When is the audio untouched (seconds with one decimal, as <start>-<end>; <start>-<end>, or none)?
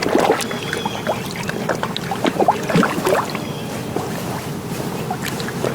0.0-3.8; 5.0-5.7